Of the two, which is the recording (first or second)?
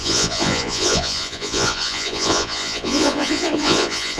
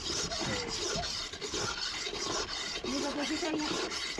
second